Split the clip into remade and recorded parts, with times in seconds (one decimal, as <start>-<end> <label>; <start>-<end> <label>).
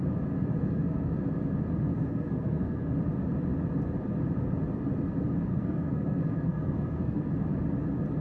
0.0-0.6 recorded; 0.6-1.2 remade; 1.2-2.1 recorded; 2.1-2.9 remade; 2.9-5.5 recorded; 5.5-7.3 remade; 7.3-8.2 recorded